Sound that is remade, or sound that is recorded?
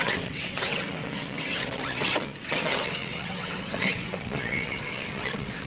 remade